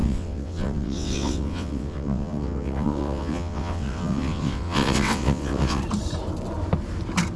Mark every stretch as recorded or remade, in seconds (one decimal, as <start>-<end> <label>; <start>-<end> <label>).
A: 0.0-5.8 remade; 5.8-7.4 recorded